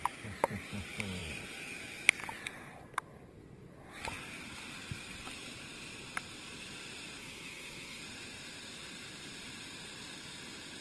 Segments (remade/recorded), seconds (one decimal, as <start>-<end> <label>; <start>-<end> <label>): 0.0-7.2 recorded; 7.2-8.0 remade; 8.0-10.8 recorded